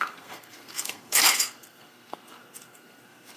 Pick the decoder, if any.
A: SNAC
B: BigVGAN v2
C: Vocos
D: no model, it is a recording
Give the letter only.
A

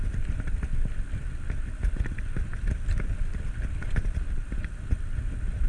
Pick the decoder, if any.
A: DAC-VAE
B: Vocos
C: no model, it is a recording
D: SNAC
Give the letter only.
C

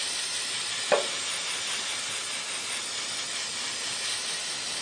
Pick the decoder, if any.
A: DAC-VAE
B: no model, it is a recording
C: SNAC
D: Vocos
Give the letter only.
B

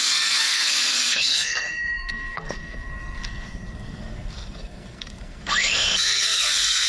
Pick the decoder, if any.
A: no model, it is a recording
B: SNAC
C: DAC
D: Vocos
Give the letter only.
B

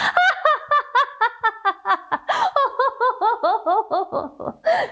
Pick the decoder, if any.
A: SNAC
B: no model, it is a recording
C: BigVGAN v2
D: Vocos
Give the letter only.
B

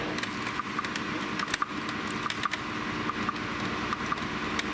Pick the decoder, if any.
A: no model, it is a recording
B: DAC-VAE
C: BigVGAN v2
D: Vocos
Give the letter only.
A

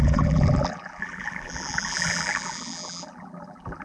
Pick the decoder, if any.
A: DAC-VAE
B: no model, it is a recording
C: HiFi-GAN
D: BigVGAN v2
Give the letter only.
D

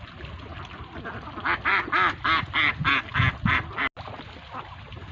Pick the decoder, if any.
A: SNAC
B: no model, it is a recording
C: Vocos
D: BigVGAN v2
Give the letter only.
B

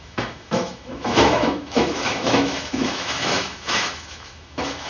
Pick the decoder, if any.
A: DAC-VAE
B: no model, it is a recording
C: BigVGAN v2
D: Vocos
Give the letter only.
A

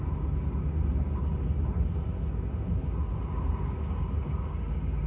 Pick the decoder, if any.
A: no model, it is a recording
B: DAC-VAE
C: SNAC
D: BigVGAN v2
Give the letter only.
A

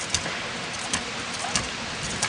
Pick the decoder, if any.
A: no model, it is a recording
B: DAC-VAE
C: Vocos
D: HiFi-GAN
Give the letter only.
A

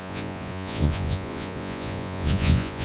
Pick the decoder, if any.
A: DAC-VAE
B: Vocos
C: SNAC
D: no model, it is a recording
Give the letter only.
B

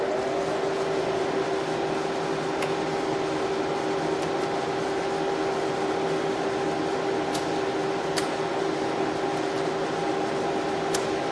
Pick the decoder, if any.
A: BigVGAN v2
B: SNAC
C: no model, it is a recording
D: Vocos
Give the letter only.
C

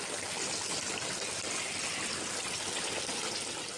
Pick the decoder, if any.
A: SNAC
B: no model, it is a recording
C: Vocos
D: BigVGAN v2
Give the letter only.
B